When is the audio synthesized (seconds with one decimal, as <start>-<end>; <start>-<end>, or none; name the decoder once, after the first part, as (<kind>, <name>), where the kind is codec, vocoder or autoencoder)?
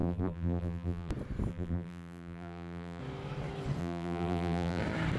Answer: 0.0-1.1 (vocoder, BigVGAN v2); 1.5-3.0; 3.8-4.8